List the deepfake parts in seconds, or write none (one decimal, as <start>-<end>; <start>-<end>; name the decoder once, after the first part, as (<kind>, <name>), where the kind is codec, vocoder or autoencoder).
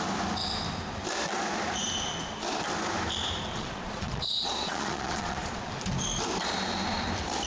3.5-5.7 (vocoder, Vocos)